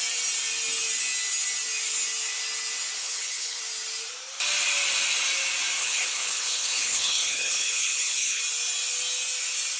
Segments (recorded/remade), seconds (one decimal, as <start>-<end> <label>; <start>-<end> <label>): 0.0-3.0 recorded; 3.0-3.6 remade; 3.6-5.8 recorded; 5.8-8.4 remade; 8.4-9.8 recorded